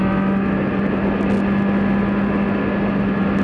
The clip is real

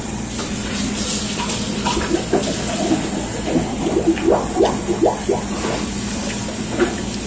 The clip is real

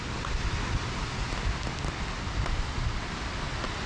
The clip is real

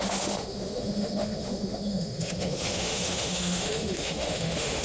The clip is fake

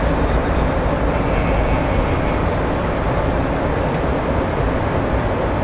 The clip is real